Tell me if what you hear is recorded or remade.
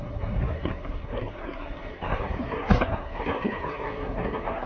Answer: remade